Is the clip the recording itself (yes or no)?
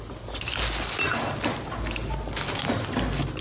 yes